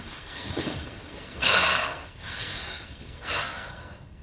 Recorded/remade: remade